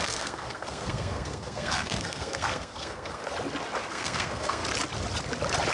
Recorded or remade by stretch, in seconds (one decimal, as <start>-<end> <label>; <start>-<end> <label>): 0.0-3.2 remade; 3.2-3.9 recorded; 3.9-4.6 remade; 4.6-5.7 recorded